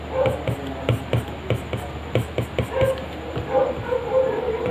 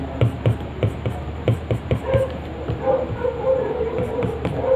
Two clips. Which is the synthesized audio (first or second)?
second